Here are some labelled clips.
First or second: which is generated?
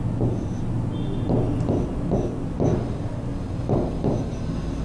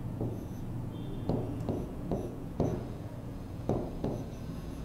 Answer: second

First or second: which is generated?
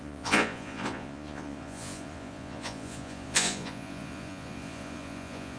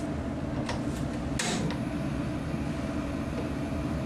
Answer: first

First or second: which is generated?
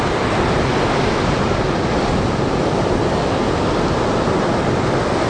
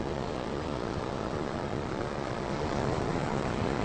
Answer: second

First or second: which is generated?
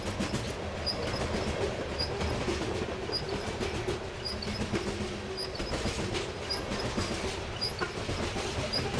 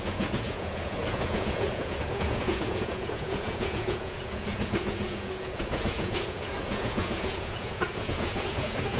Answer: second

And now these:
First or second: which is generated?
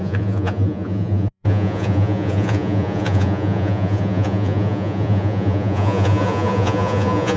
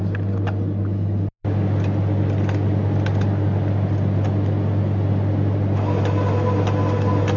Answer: first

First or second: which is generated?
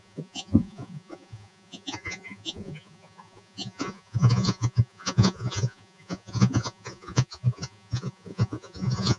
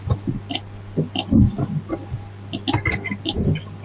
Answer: first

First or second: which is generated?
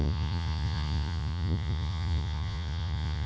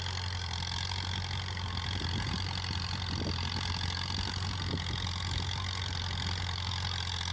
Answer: first